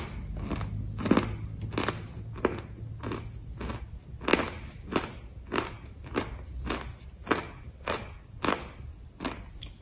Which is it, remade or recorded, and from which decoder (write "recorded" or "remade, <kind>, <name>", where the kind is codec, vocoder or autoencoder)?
recorded